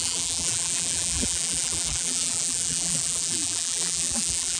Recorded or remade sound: remade